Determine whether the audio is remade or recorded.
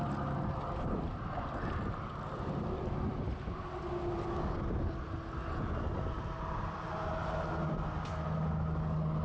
recorded